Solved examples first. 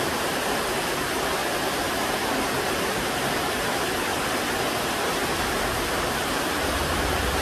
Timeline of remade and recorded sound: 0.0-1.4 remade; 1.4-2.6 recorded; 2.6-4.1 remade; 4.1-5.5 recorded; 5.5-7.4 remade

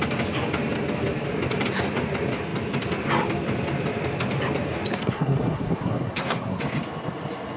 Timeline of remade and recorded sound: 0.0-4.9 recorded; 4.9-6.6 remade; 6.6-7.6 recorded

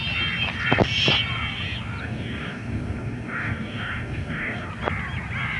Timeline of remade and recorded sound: 0.0-2.0 recorded; 2.0-4.7 remade; 4.7-5.6 recorded

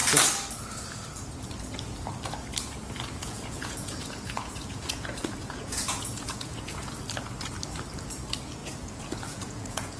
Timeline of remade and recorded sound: 0.0-3.2 recorded; 3.2-6.9 remade; 6.9-8.6 recorded; 8.6-10.0 remade